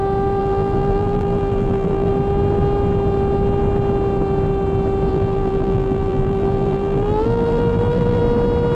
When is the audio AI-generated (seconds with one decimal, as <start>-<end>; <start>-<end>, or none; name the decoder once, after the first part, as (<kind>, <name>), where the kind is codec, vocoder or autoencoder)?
0.4-2.1 (vocoder, BigVGAN v2); 5.1-8.2